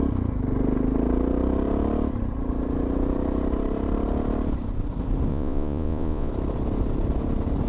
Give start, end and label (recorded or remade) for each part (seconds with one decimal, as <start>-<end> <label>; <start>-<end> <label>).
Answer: 0.0-5.3 recorded; 5.3-6.3 remade; 6.3-7.7 recorded